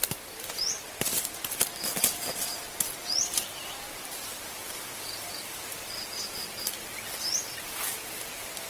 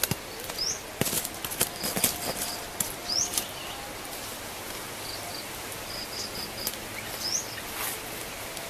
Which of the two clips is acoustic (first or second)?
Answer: second